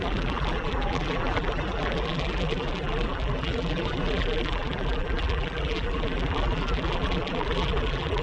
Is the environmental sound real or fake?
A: fake